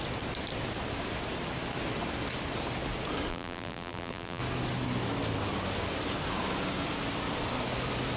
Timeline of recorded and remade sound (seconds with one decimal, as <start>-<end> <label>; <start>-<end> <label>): 0.0-3.3 recorded; 3.3-4.4 remade; 4.4-8.2 recorded

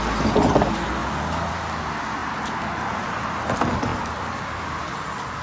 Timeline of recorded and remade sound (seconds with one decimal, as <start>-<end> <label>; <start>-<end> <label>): 0.0-2.2 recorded; 2.2-3.0 remade; 3.0-3.9 recorded; 3.9-4.9 remade; 4.9-5.4 recorded